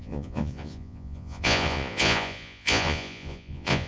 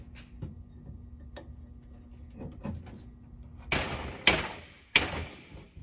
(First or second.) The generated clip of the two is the first